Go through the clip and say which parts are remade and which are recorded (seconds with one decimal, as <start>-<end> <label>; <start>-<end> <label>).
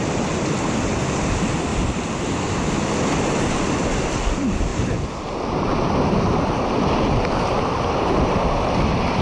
0.0-9.2 recorded